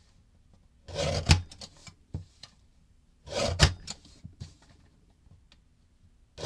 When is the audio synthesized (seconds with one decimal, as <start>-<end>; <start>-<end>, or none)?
1.8-5.2